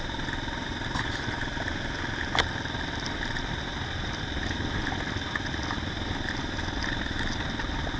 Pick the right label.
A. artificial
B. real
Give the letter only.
B